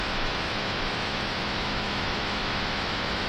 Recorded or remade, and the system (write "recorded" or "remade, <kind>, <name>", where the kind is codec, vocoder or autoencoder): remade, autoencoder, DAC-VAE